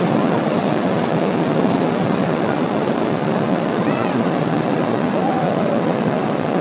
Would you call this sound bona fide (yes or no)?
no